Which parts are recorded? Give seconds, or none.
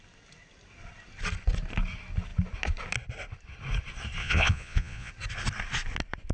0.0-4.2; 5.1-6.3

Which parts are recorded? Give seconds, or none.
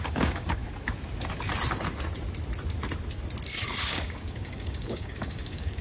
0.6-3.9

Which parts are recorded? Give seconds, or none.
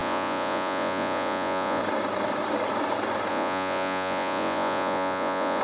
1.8-3.3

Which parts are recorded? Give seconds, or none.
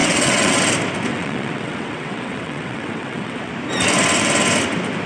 0.6-1.1; 3.5-5.1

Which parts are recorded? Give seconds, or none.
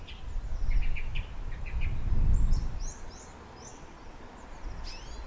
0.0-3.7; 4.2-5.3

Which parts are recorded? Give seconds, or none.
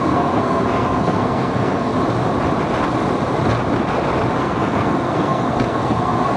1.9-4.4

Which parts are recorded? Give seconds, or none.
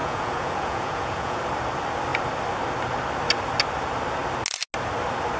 1.4-5.4